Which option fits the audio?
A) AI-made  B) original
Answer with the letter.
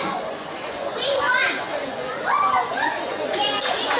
A